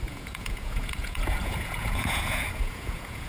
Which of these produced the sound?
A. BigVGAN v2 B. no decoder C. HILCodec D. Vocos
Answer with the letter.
D